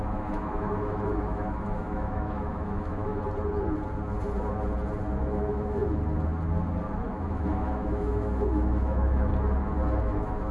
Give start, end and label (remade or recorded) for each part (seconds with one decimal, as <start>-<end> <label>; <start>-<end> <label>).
0.0-3.1 remade; 3.1-5.1 recorded; 5.1-5.8 remade; 5.8-7.1 recorded; 7.1-9.3 remade; 9.3-10.0 recorded; 10.0-10.5 remade